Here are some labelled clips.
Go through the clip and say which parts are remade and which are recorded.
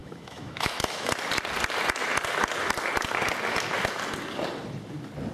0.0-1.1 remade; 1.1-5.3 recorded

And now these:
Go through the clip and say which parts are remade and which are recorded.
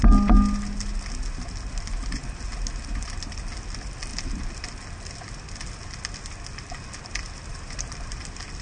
0.0-7.5 recorded; 7.5-8.2 remade; 8.2-8.6 recorded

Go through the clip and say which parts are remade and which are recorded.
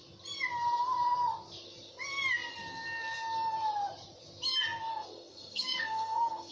0.0-4.9 recorded; 4.9-6.5 remade